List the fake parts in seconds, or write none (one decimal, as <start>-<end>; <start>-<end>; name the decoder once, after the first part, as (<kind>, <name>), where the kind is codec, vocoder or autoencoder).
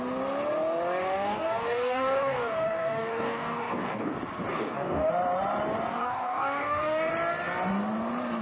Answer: 1.0-4.1 (codec, DAC); 4.5-5.1; 5.9-7.1